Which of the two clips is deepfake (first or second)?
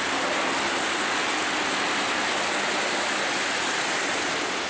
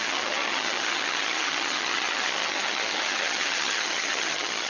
second